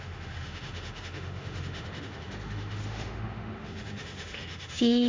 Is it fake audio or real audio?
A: fake